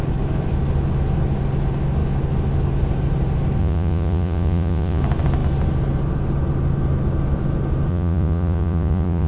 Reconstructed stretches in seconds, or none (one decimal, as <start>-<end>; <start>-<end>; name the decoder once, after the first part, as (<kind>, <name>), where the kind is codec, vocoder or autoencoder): 3.6-5.0 (vocoder, Vocos); 7.9-9.3